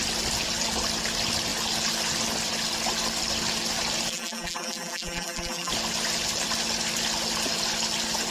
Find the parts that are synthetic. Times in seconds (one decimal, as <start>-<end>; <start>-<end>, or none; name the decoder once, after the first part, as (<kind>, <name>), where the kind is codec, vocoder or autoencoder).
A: 4.1-5.7 (vocoder, BigVGAN v2)